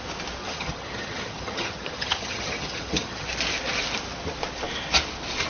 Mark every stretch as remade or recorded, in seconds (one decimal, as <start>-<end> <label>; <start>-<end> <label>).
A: 0.0-0.4 recorded; 0.4-3.3 remade; 3.3-5.5 recorded